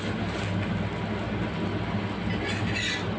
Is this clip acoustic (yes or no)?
yes